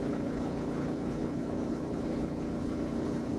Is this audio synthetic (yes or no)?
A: yes